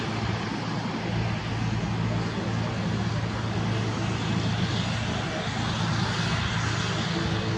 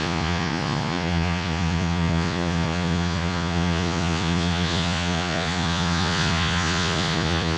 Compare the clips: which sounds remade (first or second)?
second